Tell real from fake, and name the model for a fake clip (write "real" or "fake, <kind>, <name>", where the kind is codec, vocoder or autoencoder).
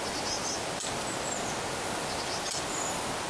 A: real